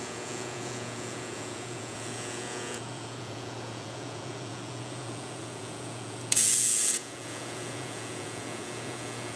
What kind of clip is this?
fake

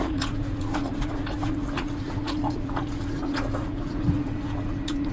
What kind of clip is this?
fake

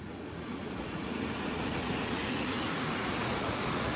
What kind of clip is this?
fake